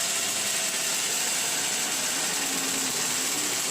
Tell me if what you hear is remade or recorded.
recorded